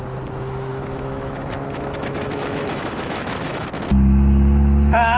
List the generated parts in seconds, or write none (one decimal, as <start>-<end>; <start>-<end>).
0.7-3.8